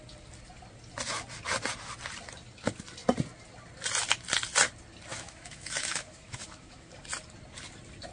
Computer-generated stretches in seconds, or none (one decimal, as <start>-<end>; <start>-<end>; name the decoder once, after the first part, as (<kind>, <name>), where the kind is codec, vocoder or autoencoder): 5.1-6.9 (autoencoder, DAC-VAE)